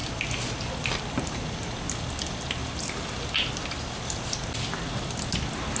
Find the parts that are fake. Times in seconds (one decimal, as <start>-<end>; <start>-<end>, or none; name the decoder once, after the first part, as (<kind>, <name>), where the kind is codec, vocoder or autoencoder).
none